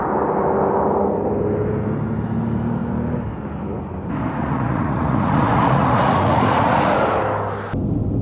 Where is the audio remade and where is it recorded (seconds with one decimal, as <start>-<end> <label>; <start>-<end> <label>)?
0.0-4.4 recorded; 4.4-7.0 remade; 7.0-8.2 recorded